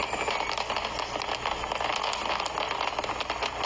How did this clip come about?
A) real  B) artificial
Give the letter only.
A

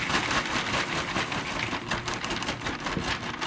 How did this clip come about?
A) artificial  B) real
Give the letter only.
B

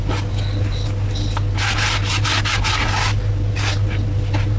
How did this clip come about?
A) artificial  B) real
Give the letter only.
B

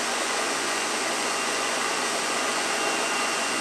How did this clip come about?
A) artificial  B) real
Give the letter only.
A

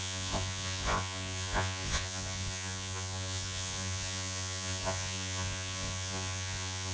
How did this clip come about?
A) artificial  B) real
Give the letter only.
A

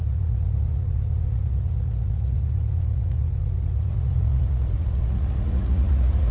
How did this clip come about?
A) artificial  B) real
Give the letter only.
A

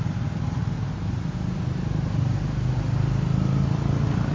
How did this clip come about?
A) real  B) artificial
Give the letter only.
A